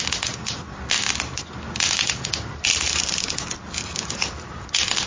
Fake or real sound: real